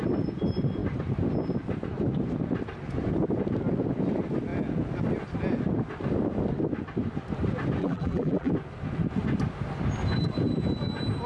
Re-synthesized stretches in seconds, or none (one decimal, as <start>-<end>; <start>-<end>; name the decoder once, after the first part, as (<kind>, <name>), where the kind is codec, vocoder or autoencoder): 7.8-8.5 (vocoder, BigVGAN v2)